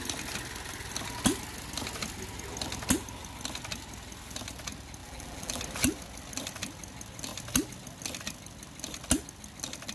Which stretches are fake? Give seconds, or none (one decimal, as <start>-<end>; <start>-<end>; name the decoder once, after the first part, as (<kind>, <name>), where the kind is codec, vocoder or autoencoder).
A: 5.0-5.6 (vocoder, BigVGAN v2)